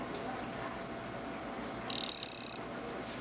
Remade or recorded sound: recorded